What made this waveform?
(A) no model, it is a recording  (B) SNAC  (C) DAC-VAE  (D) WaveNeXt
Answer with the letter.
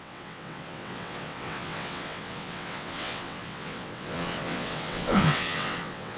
D